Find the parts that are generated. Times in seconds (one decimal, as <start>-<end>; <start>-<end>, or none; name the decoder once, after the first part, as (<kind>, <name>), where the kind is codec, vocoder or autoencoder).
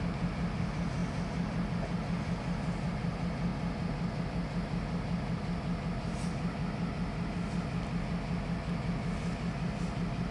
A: none